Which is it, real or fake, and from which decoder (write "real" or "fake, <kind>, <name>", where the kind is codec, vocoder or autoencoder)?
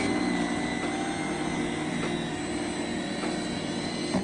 real